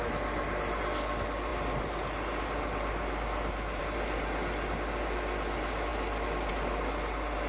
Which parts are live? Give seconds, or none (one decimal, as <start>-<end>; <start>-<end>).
0.0-7.5